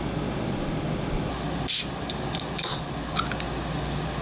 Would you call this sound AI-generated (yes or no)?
no